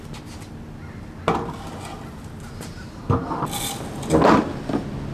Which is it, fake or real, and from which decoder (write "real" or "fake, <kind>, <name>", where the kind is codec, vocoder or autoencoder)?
real